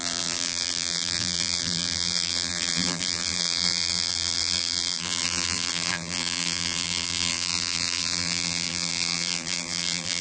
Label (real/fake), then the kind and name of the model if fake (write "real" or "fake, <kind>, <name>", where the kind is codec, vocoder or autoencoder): fake, vocoder, BigVGAN v2